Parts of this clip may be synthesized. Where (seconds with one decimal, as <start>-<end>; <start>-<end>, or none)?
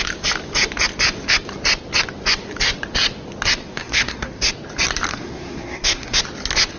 3.6-4.5; 5.1-6.2